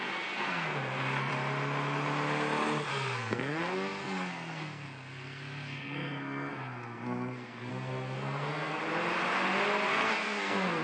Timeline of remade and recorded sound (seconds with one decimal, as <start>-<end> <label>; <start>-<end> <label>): 0.0-1.3 remade; 1.3-2.9 recorded; 2.9-8.8 remade; 8.8-9.9 recorded; 9.9-10.8 remade